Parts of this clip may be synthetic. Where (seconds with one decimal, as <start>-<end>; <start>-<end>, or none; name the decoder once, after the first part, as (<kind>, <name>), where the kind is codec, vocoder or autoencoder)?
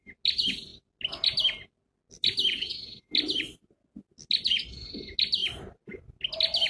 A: 2.5-3.0 (vocoder, WaveNeXt)